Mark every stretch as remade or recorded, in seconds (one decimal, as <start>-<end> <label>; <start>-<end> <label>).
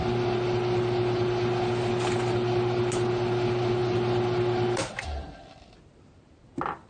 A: 0.0-6.9 recorded